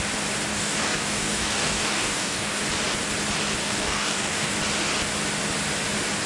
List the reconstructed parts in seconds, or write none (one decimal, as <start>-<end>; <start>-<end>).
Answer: 0.5-2.6; 3.6-4.5